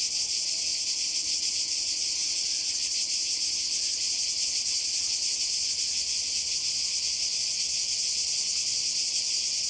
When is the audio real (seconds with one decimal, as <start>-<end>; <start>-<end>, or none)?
0.0-9.7